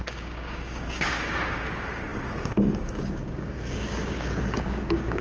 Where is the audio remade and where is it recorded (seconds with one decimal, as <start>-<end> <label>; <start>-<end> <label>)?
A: 0.0-5.2 remade